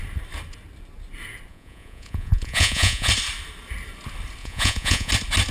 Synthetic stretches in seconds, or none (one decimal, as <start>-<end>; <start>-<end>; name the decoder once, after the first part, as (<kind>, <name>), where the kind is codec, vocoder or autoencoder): 1.5-3.1 (vocoder, Vocos); 4.4-5.1

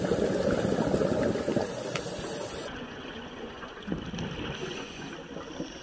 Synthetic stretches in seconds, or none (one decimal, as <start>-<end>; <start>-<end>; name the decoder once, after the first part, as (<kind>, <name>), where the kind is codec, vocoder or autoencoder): 2.6-3.9 (vocoder, Vocos); 4.6-5.1

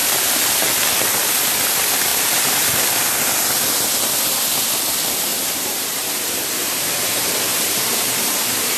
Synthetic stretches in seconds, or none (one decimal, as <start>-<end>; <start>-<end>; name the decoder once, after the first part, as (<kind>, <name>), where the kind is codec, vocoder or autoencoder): 2.1-3.0 (vocoder, BigVGAN v2); 5.3-6.9; 7.5-8.8

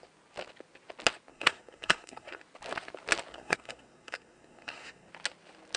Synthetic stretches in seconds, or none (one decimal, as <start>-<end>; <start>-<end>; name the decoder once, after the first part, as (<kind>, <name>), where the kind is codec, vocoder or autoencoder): 1.3-2.4 (codec, SNAC); 3.3-5.1

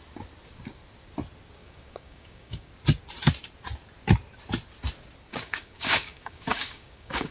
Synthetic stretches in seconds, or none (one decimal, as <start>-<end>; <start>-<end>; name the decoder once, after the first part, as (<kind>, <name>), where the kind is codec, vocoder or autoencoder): 1.6-2.7 (codec, DAC); 5.3-7.3

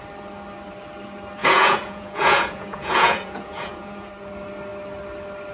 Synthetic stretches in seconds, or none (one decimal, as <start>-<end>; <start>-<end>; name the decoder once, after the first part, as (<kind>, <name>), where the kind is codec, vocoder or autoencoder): 1.4-4.1 (vocoder, Vocos)